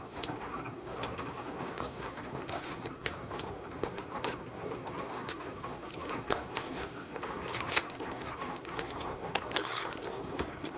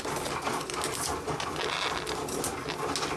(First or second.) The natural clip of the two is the second